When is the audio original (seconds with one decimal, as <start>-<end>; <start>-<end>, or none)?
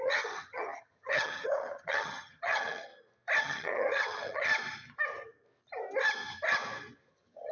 2.9-3.4; 4.5-7.1